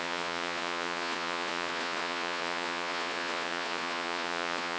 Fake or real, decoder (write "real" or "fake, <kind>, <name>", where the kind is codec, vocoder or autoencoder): fake, vocoder, Vocos